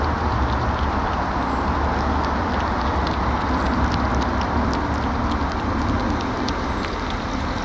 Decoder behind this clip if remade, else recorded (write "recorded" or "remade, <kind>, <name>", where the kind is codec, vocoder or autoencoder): recorded